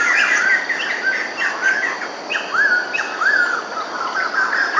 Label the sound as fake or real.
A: real